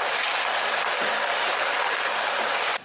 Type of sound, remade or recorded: recorded